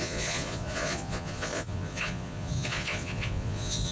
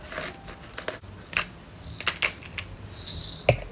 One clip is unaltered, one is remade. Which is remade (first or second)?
first